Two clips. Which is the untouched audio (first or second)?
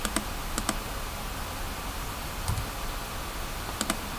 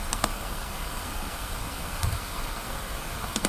first